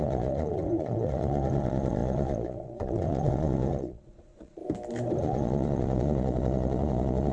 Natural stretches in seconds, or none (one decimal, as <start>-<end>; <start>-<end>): 4.6-5.2